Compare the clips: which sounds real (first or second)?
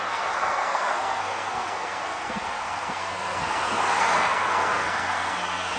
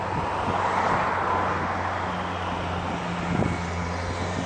second